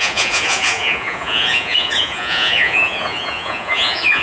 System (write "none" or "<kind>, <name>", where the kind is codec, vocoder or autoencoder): vocoder, Vocos